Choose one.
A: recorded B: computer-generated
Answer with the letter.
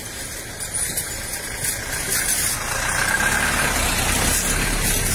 A